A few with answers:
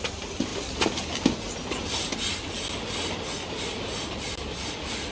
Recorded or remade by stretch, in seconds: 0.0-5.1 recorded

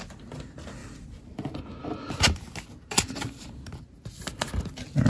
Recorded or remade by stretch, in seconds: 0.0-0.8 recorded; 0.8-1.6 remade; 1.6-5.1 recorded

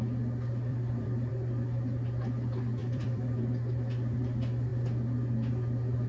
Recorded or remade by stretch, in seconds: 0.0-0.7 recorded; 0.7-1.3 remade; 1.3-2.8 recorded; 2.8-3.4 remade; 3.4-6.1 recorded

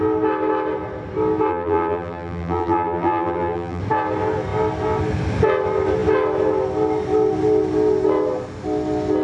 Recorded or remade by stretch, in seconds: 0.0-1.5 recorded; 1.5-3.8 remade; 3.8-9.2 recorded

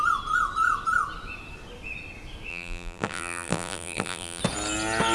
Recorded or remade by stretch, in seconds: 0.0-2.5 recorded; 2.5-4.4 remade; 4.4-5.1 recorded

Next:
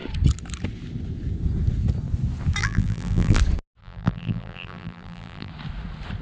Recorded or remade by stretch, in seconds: 0.0-2.6 recorded; 2.6-3.4 remade; 3.4-3.8 recorded; 3.8-5.5 remade; 5.5-6.2 recorded

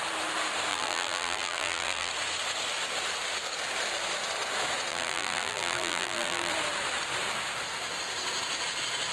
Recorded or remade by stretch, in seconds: 0.0-0.7 recorded; 0.7-2.1 remade; 2.1-4.9 recorded; 4.9-6.5 remade; 6.5-9.1 recorded

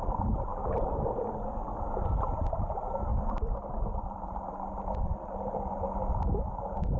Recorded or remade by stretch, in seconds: 0.0-7.0 recorded